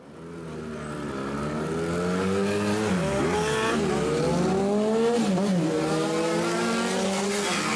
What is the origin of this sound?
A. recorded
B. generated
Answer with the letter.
A